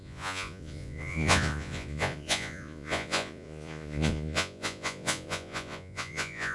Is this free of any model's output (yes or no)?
no